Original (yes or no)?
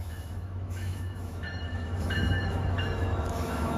no